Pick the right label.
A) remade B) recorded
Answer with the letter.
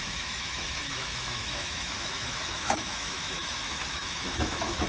A